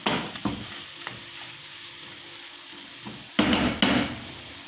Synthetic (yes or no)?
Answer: no